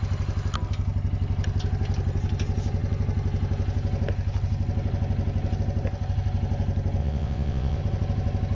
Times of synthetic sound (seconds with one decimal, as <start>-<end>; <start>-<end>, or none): 7.0-7.8